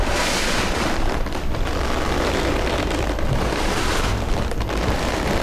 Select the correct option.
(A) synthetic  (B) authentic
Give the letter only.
A